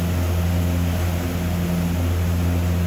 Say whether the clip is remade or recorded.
recorded